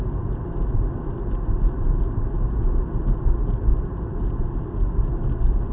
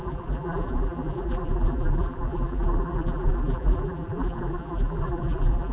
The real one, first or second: first